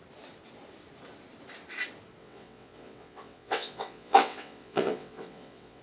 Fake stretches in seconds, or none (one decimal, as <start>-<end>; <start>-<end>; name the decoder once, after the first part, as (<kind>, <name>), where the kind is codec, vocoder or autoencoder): 2.2-5.8 (vocoder, WaveNeXt)